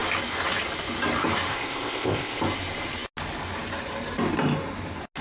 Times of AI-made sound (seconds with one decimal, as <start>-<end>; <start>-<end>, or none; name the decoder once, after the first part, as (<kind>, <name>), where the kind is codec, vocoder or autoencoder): 1.5-2.4 (codec, ZipCodec)